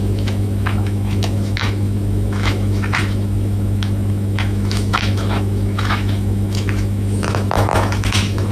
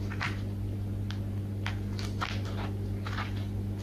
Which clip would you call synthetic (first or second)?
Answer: first